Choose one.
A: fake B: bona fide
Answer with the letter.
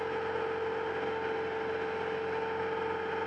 B